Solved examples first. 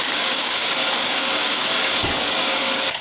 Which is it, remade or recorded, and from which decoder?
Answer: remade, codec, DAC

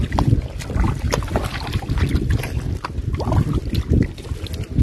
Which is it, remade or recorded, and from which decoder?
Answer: recorded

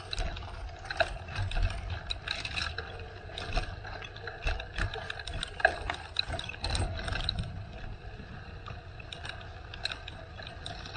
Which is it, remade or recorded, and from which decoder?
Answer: recorded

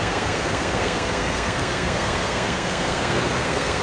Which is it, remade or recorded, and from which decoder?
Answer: remade, codec, SNAC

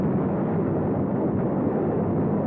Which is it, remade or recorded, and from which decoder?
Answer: recorded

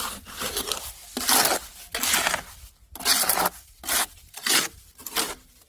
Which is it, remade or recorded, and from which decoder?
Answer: recorded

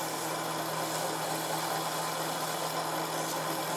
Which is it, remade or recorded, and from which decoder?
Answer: recorded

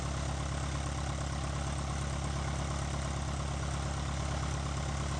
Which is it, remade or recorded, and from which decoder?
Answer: recorded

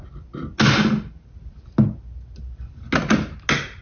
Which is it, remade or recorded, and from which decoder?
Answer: recorded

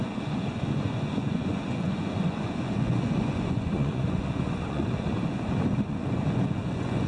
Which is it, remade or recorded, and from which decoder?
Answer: remade, vocoder, Vocos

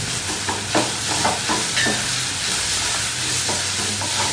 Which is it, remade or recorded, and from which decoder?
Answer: recorded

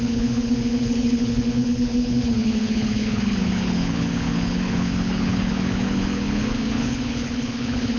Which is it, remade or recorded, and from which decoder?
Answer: remade, codec, HILCodec